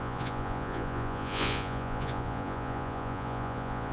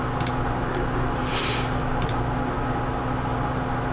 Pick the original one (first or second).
second